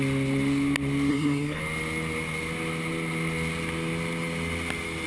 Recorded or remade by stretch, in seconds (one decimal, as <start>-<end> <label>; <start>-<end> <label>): 0.0-1.1 recorded; 1.1-1.6 remade; 1.6-5.1 recorded